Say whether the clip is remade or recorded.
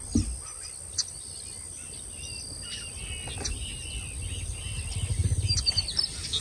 recorded